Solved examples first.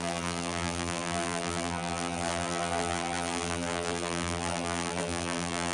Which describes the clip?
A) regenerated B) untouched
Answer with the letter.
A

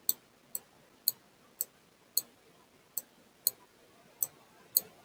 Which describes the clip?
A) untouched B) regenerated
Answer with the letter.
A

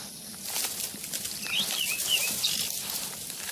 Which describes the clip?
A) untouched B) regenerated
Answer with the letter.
A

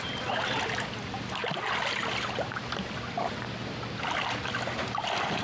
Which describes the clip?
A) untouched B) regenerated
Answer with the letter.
A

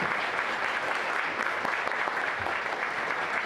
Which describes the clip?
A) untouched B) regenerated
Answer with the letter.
A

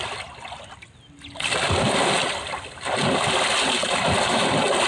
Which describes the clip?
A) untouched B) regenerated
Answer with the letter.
A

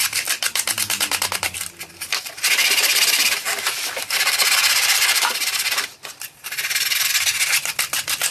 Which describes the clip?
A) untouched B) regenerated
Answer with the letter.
B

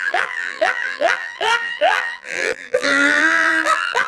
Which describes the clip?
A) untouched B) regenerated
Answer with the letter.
B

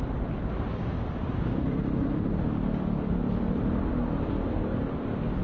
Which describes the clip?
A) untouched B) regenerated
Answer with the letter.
A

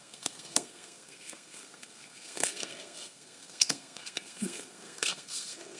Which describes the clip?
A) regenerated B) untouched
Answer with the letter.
A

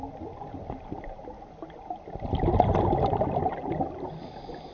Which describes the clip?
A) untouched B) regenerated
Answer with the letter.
A